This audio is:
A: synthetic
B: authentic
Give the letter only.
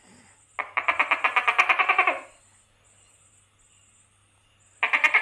B